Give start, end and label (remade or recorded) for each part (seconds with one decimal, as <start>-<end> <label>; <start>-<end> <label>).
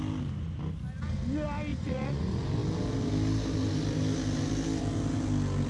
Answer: 0.0-1.7 recorded; 1.7-2.2 remade; 2.2-5.7 recorded